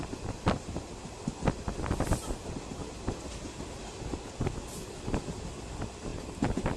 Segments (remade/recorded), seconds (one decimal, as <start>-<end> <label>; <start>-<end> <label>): 0.0-6.8 recorded